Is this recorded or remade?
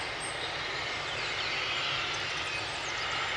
recorded